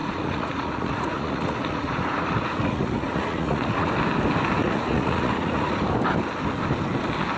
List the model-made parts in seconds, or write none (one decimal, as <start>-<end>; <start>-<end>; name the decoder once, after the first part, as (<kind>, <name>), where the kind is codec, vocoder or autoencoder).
0.0-3.9 (vocoder, Vocos); 4.6-5.8